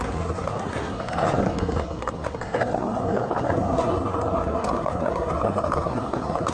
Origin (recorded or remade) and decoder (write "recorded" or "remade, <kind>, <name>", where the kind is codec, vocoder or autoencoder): remade, codec, SNAC